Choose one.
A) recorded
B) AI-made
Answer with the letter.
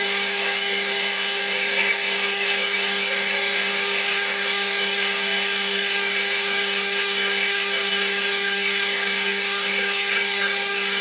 B